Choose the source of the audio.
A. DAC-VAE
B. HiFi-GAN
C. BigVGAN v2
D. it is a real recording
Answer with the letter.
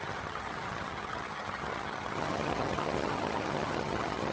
B